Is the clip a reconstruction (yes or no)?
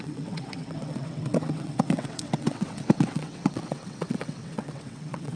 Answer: yes